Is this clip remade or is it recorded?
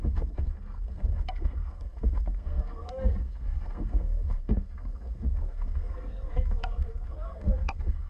remade